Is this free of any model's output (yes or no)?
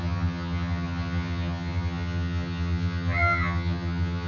no